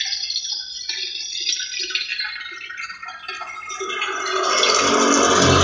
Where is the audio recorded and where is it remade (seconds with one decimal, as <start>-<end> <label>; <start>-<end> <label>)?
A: 0.0-5.6 recorded